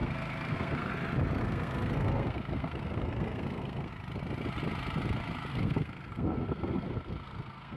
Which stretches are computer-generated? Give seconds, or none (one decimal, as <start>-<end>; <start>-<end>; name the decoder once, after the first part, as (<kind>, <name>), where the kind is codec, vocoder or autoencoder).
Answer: 0.0-0.9 (codec, SNAC); 1.4-3.9; 5.5-7.8